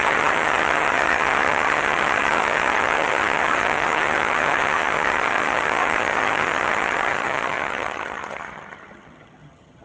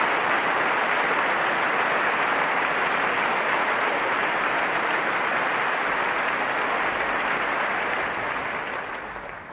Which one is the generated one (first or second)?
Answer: first